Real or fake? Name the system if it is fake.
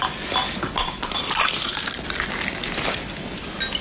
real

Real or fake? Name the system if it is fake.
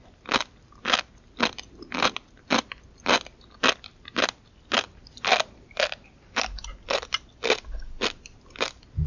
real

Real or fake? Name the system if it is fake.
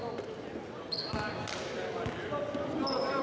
real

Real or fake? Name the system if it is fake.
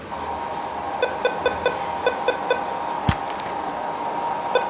real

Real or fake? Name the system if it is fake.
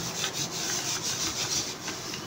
real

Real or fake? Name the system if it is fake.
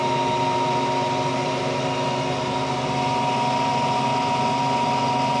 real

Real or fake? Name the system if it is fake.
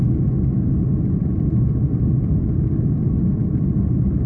real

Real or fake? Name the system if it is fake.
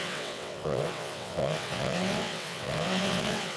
fake, vocoder, WaveNeXt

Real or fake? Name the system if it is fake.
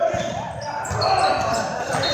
real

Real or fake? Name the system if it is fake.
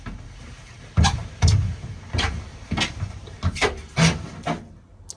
real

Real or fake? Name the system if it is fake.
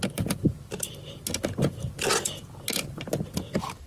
real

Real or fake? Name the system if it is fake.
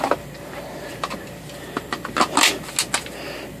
real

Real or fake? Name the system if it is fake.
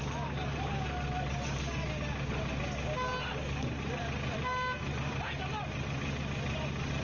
real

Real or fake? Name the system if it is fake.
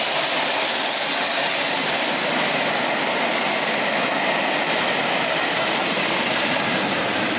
real